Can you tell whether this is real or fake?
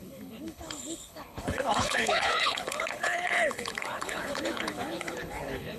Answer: fake